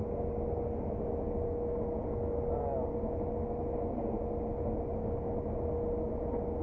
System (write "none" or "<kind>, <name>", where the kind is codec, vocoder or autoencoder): none